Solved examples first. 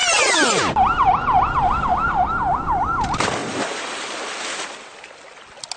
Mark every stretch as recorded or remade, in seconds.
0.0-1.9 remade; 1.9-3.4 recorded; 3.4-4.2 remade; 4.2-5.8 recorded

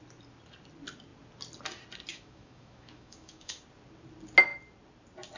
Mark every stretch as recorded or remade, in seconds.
0.0-2.1 recorded; 2.1-3.6 remade; 3.6-5.4 recorded

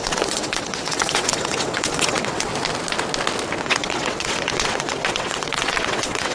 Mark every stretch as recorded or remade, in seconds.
0.0-2.5 remade; 2.5-3.6 recorded; 3.6-6.3 remade

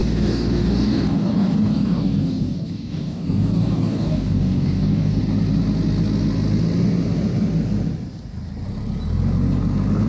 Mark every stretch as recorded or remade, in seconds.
0.0-5.2 remade; 5.2-10.1 recorded

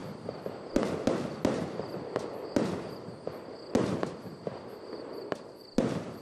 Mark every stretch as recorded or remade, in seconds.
0.0-6.2 recorded

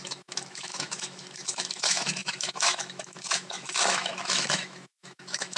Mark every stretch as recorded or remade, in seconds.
0.0-5.6 remade

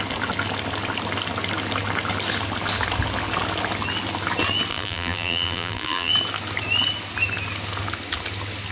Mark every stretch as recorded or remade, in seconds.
0.0-4.7 recorded; 4.7-6.1 remade; 6.1-8.7 recorded

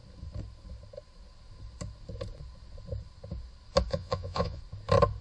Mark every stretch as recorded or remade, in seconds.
0.0-3.9 recorded; 3.9-4.6 remade; 4.6-5.2 recorded